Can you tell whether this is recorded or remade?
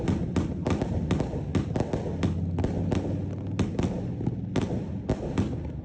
recorded